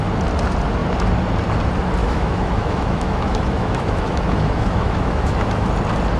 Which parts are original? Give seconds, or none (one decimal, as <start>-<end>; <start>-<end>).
0.0-2.0; 5.7-6.2